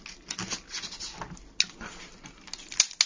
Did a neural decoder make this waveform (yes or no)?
no